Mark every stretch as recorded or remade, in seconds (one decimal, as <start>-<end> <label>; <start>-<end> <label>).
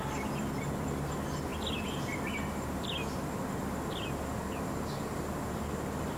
0.0-6.2 recorded